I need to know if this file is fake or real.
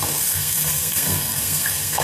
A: fake